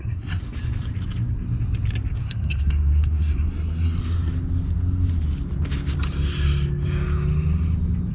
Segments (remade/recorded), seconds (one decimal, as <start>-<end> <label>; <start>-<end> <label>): 0.0-0.4 remade; 0.4-2.2 recorded; 2.2-4.0 remade; 4.0-8.1 recorded

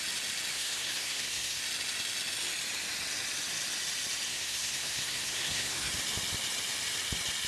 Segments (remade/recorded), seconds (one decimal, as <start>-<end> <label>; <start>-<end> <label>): 0.0-0.5 recorded; 0.5-1.6 remade; 1.6-4.3 recorded; 4.3-5.9 remade; 5.9-7.5 recorded

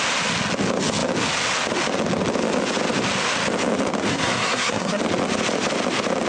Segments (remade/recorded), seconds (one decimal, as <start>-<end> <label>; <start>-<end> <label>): 0.0-4.1 recorded; 4.1-5.0 remade; 5.0-6.3 recorded

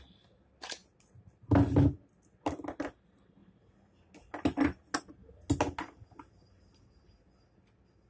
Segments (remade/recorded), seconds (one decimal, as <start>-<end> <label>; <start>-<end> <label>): 0.0-8.1 recorded